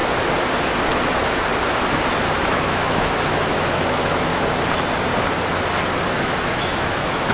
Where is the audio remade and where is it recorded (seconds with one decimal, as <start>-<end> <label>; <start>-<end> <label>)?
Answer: 0.0-2.4 recorded; 2.4-4.3 remade; 4.3-6.1 recorded; 6.1-7.3 remade